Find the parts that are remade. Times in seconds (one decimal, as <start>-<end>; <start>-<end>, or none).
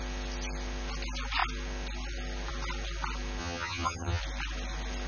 3.4-4.2